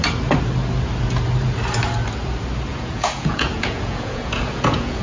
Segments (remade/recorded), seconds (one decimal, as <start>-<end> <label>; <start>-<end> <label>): 0.0-2.7 recorded; 2.7-5.0 remade

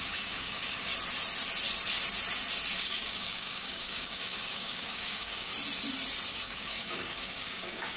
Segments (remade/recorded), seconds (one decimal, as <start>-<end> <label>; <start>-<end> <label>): 0.0-0.9 remade; 0.9-2.8 recorded; 2.8-5.5 remade; 5.5-6.3 recorded; 6.3-8.0 remade